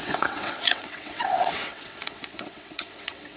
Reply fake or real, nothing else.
fake